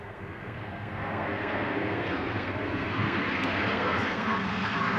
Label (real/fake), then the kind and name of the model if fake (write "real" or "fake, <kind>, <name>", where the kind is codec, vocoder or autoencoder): fake, codec, SNAC